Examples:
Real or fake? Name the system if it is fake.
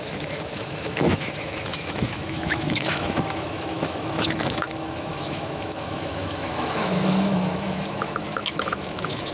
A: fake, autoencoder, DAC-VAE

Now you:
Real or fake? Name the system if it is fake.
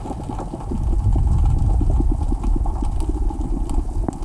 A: real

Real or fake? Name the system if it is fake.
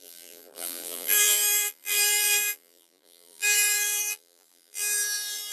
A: fake, vocoder, BigVGAN v2